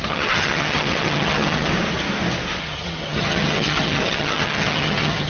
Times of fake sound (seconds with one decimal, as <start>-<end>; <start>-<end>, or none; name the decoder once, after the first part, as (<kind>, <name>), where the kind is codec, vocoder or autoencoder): 0.0-1.7 (vocoder, HiFi-GAN); 2.6-5.3